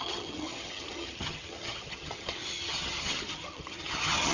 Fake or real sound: fake